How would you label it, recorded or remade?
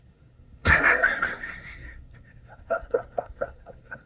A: remade